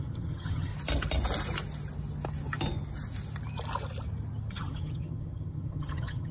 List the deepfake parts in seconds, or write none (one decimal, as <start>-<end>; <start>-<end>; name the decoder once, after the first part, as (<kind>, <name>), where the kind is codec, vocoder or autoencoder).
0.0-0.7 (vocoder, HiFi-GAN); 4.5-6.3